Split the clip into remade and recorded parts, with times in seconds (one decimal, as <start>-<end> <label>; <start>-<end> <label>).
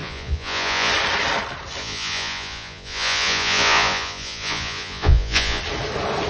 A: 0.0-0.9 remade; 0.9-1.8 recorded; 1.8-5.6 remade; 5.6-6.3 recorded